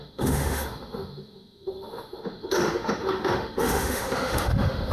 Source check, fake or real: fake